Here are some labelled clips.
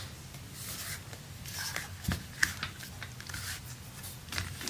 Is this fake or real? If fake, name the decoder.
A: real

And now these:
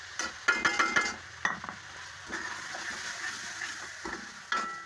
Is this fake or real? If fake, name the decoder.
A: real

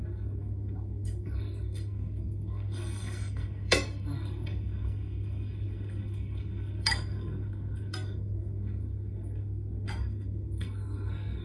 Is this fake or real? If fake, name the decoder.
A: fake, codec, SNAC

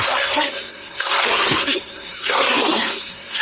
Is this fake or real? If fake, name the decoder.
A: fake, codec, SNAC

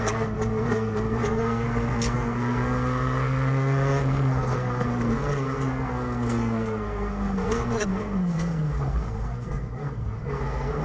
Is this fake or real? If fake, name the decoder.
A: fake, codec, SNAC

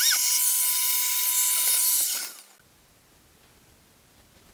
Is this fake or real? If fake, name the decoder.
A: real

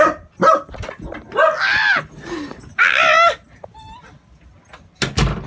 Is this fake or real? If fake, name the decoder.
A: real